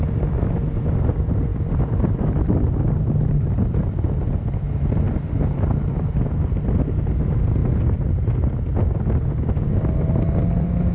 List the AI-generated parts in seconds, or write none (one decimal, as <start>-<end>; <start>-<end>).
1.5-6.5